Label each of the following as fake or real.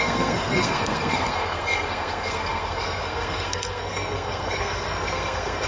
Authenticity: fake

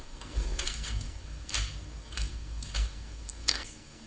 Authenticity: fake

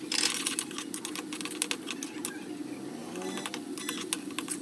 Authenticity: real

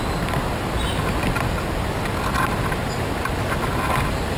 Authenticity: real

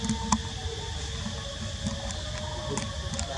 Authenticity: real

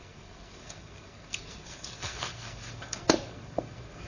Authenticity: fake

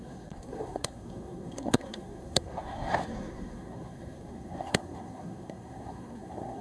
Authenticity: fake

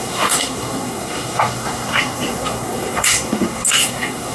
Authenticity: fake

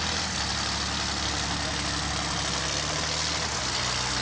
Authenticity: real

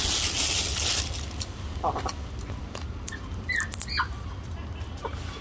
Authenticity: real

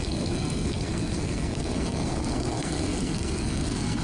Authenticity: fake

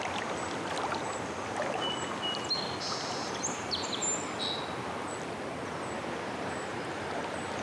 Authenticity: real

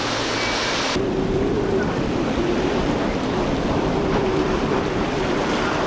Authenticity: real